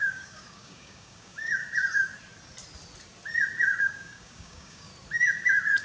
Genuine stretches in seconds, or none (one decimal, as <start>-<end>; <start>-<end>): 1.6-3.8; 4.9-5.8

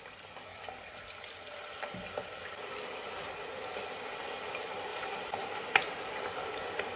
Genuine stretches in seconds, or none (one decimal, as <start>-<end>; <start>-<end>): 0.0-7.0

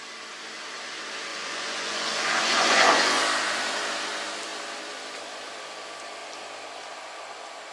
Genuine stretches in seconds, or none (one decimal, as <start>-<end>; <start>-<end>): 0.0-1.3; 3.2-7.7

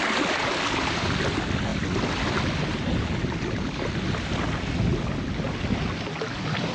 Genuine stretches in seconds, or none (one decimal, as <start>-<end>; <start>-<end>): 0.0-6.7

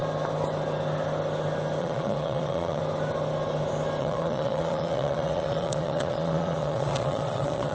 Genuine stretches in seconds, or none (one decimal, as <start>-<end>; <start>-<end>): 0.0-1.8; 2.8-4.0